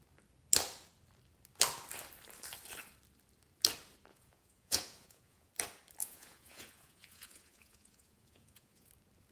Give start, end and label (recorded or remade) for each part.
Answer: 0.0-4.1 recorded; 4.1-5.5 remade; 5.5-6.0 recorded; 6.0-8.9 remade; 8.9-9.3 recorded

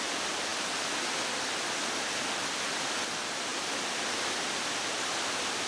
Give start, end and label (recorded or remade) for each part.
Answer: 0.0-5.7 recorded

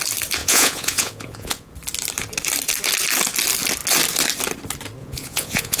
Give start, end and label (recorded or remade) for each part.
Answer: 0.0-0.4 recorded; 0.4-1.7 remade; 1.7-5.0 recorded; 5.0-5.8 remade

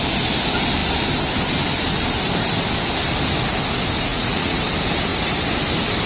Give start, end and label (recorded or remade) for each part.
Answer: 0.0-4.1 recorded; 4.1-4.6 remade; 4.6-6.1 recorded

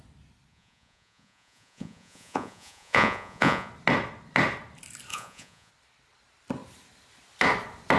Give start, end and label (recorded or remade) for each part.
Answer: 0.0-0.5 recorded; 0.5-3.7 remade; 3.7-5.1 recorded; 5.1-5.7 remade; 5.7-8.0 recorded